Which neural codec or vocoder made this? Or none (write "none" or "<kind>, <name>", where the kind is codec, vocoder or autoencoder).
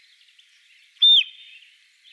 none